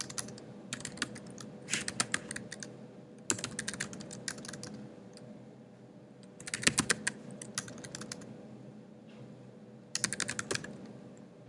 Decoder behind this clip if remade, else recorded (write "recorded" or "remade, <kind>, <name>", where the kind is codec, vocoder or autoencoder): recorded